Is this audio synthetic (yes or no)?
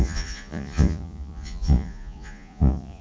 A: yes